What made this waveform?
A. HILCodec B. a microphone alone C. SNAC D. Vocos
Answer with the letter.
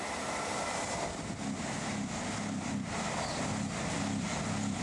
B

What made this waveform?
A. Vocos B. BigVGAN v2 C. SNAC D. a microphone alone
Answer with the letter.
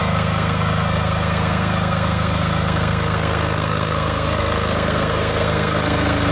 C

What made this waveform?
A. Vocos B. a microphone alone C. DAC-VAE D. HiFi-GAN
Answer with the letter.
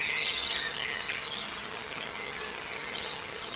D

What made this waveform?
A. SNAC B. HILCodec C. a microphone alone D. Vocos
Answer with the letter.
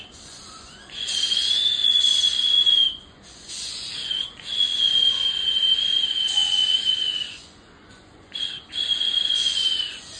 D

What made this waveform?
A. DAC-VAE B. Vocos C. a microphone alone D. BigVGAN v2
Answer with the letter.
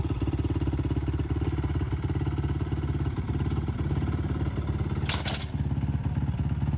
C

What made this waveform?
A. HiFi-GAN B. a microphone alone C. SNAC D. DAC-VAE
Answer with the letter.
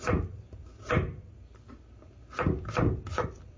B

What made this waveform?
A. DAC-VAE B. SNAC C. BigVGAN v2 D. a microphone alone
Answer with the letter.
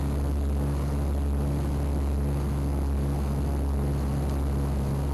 D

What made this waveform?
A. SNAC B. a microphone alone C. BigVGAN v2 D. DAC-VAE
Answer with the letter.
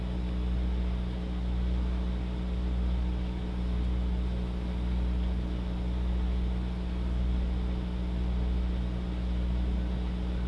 B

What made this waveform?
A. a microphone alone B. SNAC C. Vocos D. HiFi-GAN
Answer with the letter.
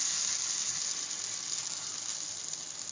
A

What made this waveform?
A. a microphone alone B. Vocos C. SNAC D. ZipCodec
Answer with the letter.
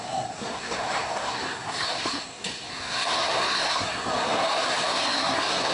C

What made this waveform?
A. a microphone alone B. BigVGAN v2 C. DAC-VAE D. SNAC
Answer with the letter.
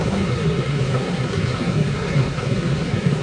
D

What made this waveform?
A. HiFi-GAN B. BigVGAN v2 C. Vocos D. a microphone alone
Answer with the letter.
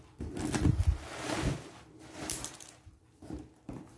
D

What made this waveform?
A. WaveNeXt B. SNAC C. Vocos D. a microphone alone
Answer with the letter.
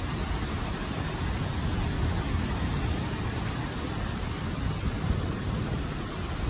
D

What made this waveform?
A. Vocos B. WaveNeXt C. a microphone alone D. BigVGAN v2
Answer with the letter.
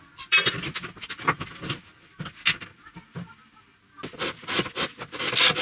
C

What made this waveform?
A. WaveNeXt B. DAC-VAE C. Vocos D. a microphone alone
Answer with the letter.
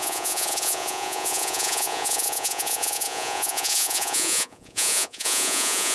C